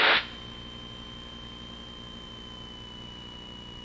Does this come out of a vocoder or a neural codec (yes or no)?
no